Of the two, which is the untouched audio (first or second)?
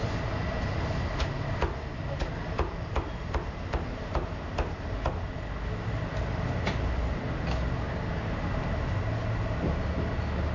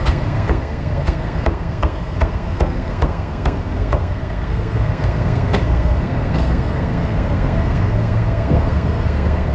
first